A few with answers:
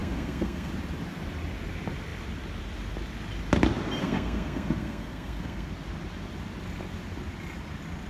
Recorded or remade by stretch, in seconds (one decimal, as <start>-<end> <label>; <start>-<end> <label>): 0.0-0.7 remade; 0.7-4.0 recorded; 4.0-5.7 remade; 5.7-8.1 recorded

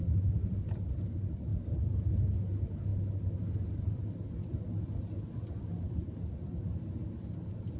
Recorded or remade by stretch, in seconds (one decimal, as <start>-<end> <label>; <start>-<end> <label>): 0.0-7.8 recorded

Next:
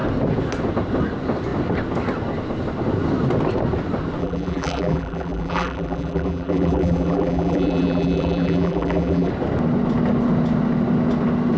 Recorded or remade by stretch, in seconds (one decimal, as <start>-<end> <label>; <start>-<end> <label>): 0.0-4.2 recorded; 4.2-9.3 remade; 9.3-11.6 recorded